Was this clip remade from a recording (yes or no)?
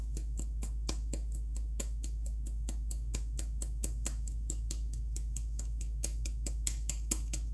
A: yes